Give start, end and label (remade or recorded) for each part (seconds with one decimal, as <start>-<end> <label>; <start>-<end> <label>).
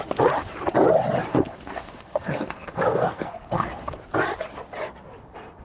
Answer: 0.0-1.3 recorded; 1.3-4.0 remade; 4.0-5.6 recorded